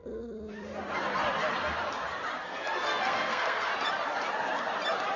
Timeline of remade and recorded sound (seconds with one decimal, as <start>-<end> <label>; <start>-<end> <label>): 0.0-2.4 recorded; 2.4-3.7 remade; 3.7-5.2 recorded